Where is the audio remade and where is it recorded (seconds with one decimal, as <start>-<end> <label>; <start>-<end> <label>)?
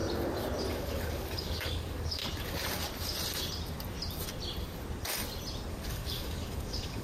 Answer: 0.0-0.7 recorded; 0.7-2.2 remade; 2.2-5.7 recorded; 5.7-7.0 remade